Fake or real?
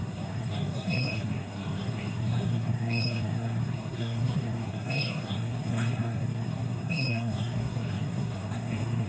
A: fake